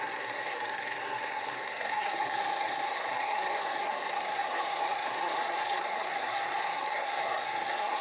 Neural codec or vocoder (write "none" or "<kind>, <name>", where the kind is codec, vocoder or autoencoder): codec, SNAC